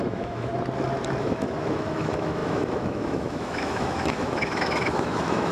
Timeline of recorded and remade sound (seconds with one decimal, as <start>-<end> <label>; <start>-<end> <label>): 0.0-0.5 remade; 0.5-1.2 recorded; 1.2-5.5 remade